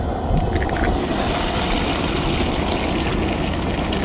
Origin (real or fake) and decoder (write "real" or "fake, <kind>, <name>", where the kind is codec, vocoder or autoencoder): real